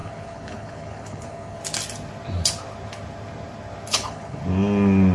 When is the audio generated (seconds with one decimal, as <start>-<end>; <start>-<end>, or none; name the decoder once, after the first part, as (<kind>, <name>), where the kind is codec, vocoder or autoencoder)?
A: 0.0-1.6 (codec, HILCodec); 3.9-4.4